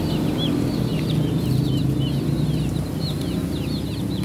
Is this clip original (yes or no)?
yes